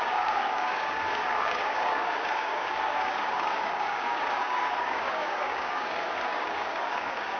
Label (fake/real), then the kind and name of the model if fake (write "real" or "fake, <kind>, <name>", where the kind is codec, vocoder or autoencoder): fake, codec, DAC